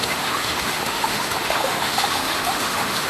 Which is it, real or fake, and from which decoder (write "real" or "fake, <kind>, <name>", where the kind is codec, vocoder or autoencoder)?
fake, autoencoder, DAC-VAE